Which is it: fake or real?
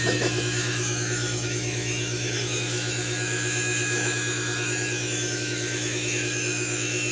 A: fake